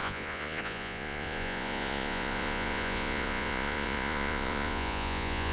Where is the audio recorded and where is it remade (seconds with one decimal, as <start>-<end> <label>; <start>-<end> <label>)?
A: 0.0-5.5 remade